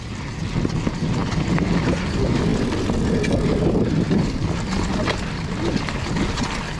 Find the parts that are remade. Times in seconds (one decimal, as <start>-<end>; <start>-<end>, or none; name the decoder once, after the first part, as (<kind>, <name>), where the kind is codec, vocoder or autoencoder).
none

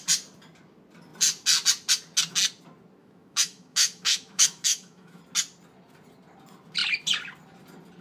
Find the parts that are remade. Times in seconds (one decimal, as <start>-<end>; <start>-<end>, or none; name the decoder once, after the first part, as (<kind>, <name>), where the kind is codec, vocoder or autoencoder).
3.0-5.2 (autoencoder, DAC-VAE)

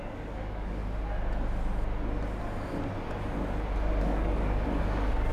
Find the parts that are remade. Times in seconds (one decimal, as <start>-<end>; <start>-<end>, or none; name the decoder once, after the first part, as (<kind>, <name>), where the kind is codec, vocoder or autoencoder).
0.0-0.8 (codec, DAC); 4.0-5.3

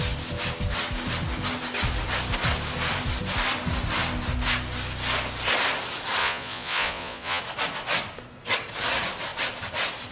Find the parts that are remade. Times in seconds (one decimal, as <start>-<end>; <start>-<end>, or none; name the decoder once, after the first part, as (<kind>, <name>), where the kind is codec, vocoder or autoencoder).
6.2-7.4 (vocoder, Vocos)